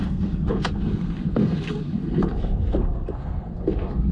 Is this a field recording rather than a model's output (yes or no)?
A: no